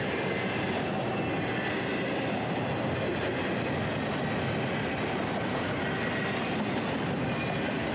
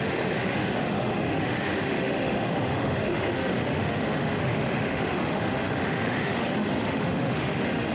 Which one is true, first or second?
first